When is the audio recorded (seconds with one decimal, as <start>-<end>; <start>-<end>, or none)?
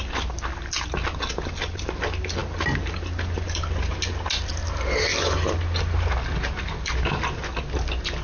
0.0-8.2